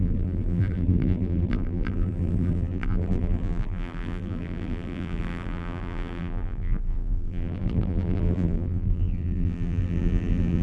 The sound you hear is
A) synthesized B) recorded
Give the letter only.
A